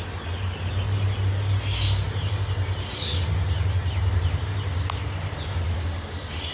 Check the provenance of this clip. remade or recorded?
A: recorded